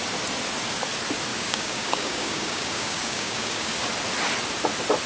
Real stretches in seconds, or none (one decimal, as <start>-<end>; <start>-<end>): 0.0-1.3; 3.7-5.1